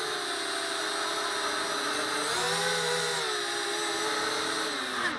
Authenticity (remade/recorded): recorded